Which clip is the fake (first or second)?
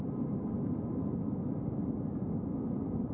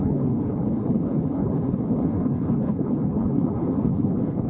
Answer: second